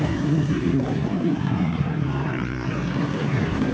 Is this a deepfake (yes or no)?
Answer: yes